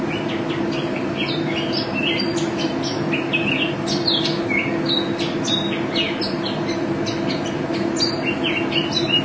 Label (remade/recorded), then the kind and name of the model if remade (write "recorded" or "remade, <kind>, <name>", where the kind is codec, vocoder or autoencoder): recorded